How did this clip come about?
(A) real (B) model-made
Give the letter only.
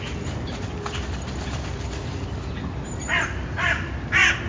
A